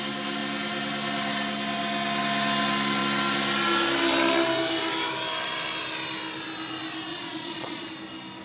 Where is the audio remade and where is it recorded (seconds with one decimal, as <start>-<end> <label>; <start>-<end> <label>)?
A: 0.0-7.1 recorded; 7.1-7.9 remade; 7.9-8.4 recorded